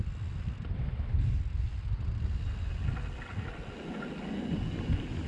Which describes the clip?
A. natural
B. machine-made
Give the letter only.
A